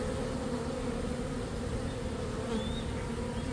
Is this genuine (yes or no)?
yes